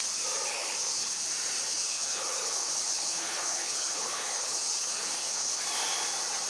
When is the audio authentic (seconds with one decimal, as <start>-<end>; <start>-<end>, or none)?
0.0-0.5; 1.2-1.7; 5.6-6.5